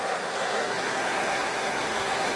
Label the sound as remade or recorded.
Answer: remade